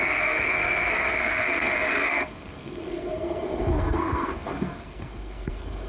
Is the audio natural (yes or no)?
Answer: no